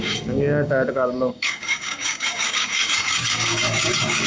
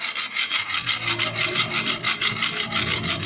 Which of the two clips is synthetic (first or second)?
first